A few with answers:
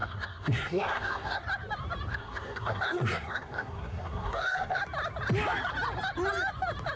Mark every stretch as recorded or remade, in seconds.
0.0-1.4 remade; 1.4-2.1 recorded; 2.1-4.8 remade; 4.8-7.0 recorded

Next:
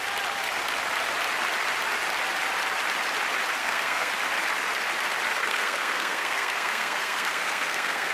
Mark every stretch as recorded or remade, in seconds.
0.0-3.6 recorded; 3.6-4.1 remade; 4.1-5.4 recorded; 5.4-8.1 remade

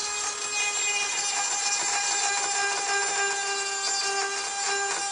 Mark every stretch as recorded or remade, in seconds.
0.0-5.1 recorded

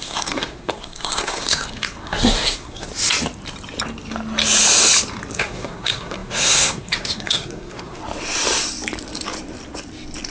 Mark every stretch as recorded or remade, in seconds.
0.0-2.9 remade; 2.9-5.4 recorded; 5.4-8.0 remade; 8.0-10.3 recorded

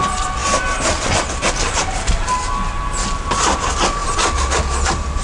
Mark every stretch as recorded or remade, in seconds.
0.0-5.2 recorded